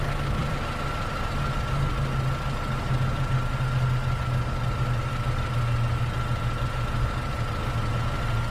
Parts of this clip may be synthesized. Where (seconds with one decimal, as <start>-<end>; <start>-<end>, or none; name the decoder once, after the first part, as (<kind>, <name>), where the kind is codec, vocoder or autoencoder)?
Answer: 0.4-1.4 (vocoder, BigVGAN v2)